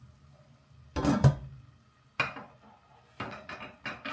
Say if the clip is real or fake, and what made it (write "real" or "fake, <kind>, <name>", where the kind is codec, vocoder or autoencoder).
real